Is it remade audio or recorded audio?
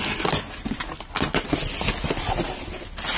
recorded